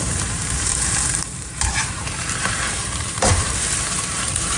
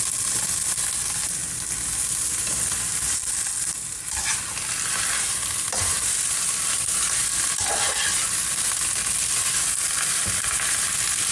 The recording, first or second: second